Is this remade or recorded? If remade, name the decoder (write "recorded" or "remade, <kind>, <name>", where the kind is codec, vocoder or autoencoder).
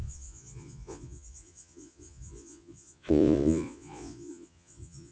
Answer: remade, vocoder, Vocos